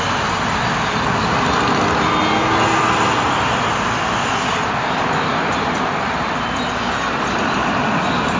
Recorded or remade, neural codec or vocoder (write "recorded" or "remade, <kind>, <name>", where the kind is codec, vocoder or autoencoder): recorded